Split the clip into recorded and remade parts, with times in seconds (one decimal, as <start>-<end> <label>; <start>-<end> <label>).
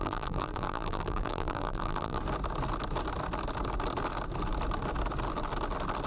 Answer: 0.0-2.2 remade; 2.2-6.1 recorded